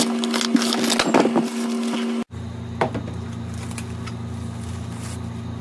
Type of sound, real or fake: real